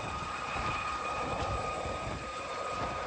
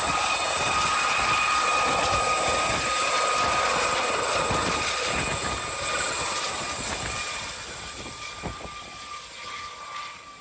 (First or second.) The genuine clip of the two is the second